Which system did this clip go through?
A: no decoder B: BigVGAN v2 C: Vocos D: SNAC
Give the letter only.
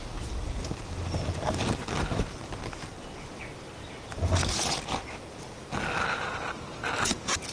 A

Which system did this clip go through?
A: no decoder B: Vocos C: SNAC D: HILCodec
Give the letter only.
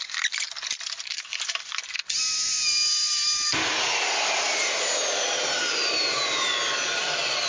A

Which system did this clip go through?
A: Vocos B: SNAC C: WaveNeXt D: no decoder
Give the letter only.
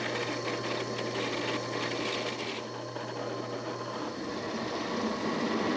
D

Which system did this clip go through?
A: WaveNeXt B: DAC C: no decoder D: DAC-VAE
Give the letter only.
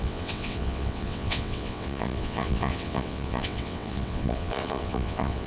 A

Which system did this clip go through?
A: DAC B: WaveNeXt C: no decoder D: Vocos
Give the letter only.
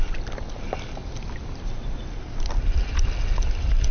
C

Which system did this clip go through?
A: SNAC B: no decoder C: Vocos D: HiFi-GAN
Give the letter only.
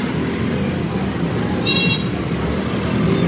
B